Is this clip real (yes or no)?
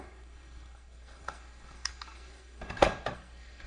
no